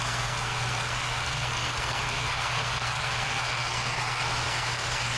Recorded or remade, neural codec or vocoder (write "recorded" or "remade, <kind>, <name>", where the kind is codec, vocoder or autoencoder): remade, codec, SNAC